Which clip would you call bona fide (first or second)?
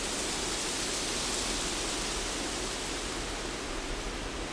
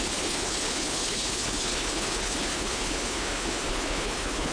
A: first